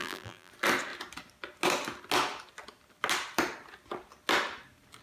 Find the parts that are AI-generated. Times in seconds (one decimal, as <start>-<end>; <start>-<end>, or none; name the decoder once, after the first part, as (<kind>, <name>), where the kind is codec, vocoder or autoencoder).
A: 0.0-0.5 (vocoder, BigVGAN v2)

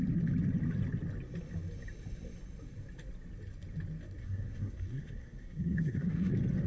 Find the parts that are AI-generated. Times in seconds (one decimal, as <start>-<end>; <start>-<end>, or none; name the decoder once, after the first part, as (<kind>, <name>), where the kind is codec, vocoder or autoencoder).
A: 4.2-6.3 (codec, SNAC)

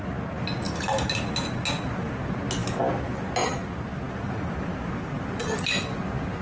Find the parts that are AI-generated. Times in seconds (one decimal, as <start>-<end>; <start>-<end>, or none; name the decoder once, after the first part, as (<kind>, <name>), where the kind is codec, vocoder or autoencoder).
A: none

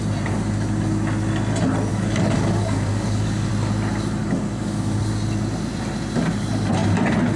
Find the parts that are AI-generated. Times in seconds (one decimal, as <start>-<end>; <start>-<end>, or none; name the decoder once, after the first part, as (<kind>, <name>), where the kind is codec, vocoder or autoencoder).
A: 1.9-3.5 (codec, DAC); 4.2-5.0

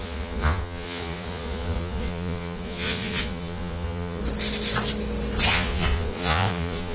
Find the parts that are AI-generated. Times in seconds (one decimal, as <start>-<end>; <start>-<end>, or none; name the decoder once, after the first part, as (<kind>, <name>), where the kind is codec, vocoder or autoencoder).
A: 0.0-4.2 (vocoder, Vocos); 5.5-6.9

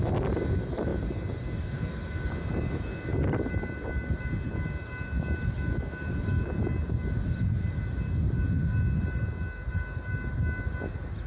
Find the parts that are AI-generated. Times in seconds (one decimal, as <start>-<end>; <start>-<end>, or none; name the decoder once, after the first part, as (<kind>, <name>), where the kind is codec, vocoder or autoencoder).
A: none

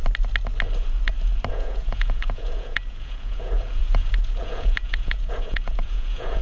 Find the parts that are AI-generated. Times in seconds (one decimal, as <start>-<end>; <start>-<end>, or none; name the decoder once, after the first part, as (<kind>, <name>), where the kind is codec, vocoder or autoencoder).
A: 1.5-6.4 (vocoder, Vocos)

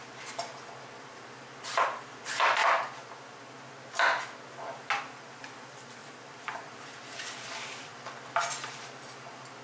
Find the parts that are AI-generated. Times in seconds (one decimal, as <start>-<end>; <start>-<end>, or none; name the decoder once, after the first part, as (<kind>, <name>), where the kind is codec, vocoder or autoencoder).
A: 6.0-8.8 (vocoder, BigVGAN v2)